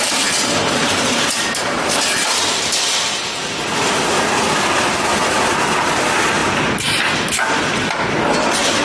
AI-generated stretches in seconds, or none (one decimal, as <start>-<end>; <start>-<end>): 0.6-1.2